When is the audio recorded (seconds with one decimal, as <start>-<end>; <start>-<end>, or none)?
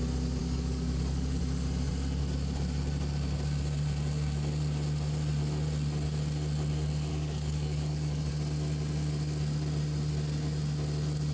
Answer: 0.0-0.4; 1.4-7.1; 8.3-11.3